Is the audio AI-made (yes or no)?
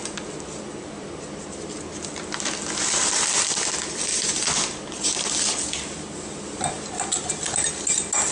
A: no